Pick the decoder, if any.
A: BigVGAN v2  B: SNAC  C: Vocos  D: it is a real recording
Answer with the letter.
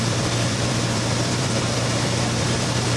A